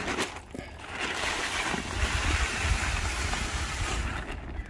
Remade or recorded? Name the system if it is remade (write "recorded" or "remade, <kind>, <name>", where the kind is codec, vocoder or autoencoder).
recorded